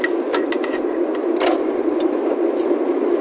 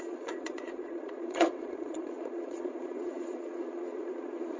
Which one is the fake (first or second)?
second